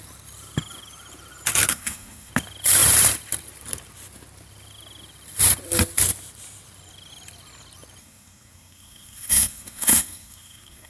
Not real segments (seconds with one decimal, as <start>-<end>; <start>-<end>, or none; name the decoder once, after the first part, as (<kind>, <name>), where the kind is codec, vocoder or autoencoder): 1.7-2.3 (codec, SNAC); 8.0-10.9